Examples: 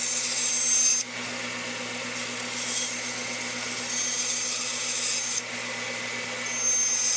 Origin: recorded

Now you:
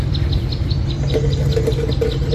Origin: recorded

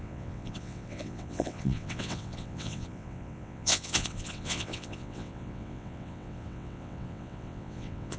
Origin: remade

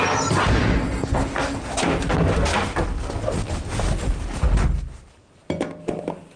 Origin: recorded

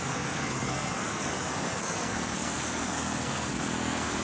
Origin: remade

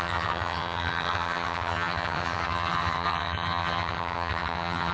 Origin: remade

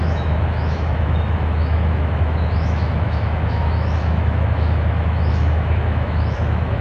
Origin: remade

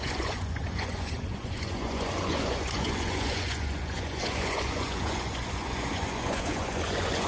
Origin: remade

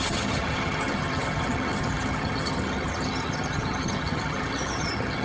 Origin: remade